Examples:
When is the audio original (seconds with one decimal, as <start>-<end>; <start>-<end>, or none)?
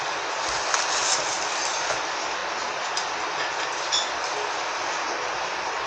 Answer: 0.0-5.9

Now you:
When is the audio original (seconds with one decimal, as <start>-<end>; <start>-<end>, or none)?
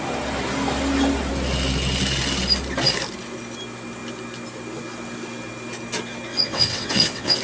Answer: 0.0-6.3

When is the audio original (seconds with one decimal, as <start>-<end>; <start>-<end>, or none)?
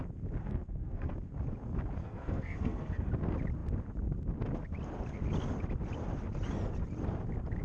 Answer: 0.0-0.4; 1.1-2.0; 3.1-7.6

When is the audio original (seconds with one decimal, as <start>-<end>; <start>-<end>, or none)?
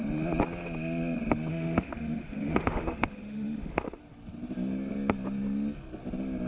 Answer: 0.0-1.5; 4.0-6.5